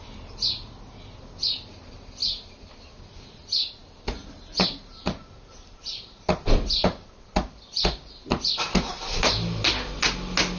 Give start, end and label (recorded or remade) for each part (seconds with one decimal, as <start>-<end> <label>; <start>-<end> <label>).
0.0-10.6 recorded